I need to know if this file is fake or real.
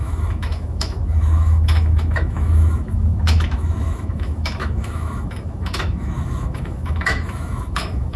fake